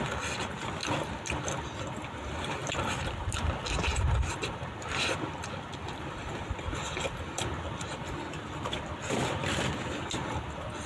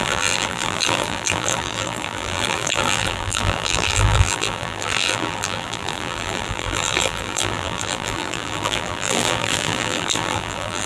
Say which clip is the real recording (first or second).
first